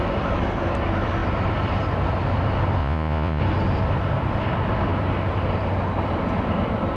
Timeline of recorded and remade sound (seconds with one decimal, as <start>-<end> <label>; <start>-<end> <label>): 0.0-2.8 recorded; 2.8-3.4 remade; 3.4-7.0 recorded